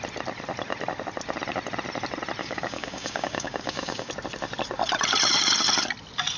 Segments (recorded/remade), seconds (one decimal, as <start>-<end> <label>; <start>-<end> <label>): 0.0-2.4 recorded; 2.4-4.1 remade; 4.1-6.4 recorded